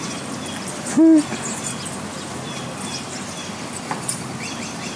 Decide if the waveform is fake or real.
real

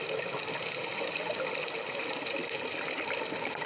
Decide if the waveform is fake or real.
real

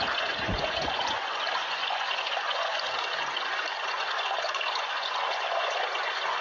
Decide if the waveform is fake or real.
fake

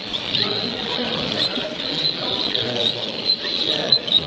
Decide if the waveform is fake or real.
fake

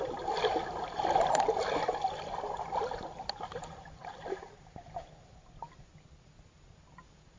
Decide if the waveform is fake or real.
real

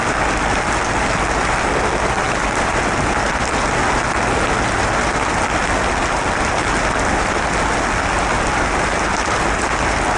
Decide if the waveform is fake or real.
real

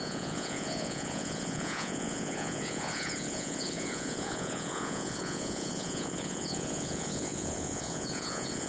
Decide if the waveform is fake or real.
fake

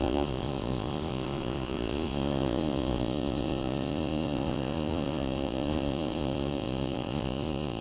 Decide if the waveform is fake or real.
fake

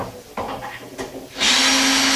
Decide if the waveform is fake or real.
real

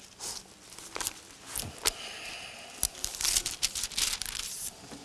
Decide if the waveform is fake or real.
real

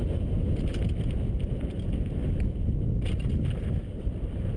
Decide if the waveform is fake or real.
real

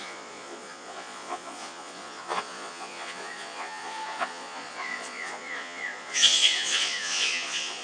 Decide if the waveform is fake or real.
fake